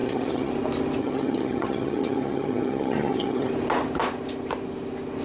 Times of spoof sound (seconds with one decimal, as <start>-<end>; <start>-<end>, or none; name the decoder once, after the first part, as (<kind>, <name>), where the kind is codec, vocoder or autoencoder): 0.0-0.5 (vocoder, HiFi-GAN); 1.0-3.5